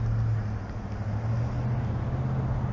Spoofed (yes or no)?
no